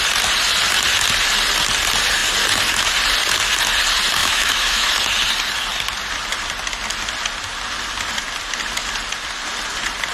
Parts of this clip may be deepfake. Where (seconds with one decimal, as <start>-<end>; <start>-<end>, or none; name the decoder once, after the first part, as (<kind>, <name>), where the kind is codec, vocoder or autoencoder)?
4.2-4.9 (autoencoder, DAC-VAE)